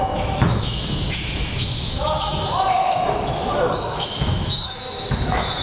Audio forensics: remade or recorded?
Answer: remade